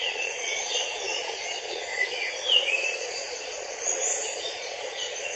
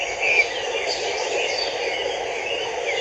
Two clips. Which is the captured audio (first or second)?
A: second